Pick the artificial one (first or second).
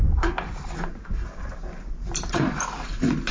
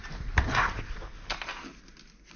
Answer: first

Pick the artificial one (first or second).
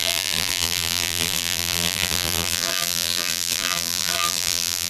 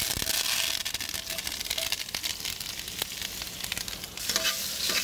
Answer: first